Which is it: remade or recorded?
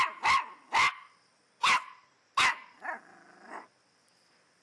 recorded